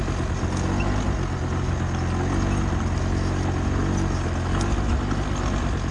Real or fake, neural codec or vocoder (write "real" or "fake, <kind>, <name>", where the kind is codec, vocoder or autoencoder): real